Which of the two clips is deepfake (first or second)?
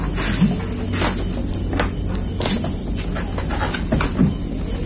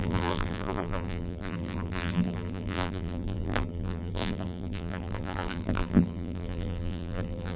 second